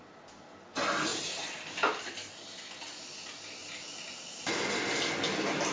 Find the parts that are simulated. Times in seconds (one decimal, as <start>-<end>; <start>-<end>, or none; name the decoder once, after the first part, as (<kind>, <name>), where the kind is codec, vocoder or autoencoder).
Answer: 1.1-1.6 (vocoder, BigVGAN v2); 3.6-4.5